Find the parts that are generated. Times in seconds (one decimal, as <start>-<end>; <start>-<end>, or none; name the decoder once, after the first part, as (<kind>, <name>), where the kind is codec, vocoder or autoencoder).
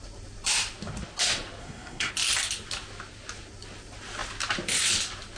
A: 1.6-2.1 (codec, SNAC)